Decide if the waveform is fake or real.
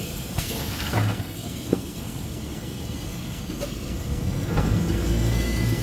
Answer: fake